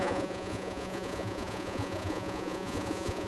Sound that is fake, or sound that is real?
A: fake